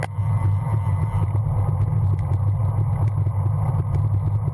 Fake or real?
real